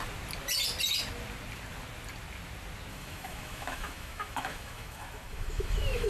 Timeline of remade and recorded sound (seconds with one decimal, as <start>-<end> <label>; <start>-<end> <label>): 0.0-2.9 recorded; 2.9-6.1 remade